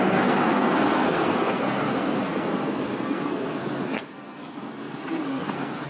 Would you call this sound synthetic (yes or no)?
yes